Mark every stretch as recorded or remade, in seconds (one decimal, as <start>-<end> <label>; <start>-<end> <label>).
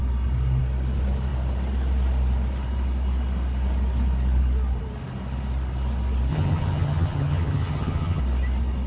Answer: 0.0-6.3 recorded; 6.3-8.2 remade; 8.2-8.9 recorded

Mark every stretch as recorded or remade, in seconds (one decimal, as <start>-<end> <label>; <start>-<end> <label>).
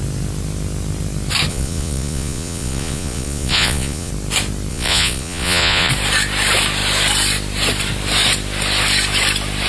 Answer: 0.0-1.5 recorded; 1.5-4.1 remade; 4.1-4.7 recorded; 4.7-5.9 remade; 5.9-9.7 recorded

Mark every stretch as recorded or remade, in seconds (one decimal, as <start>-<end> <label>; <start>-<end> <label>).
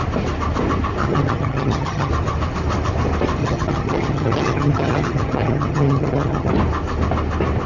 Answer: 0.0-1.0 recorded; 1.0-2.1 remade; 2.1-3.4 recorded; 3.4-6.5 remade; 6.5-7.7 recorded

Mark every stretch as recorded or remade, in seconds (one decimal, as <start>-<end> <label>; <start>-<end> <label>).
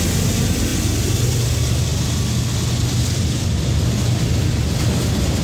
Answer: 0.0-5.4 recorded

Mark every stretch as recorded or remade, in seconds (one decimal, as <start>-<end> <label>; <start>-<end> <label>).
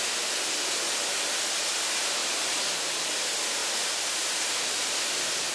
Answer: 0.0-3.6 recorded; 3.6-5.5 remade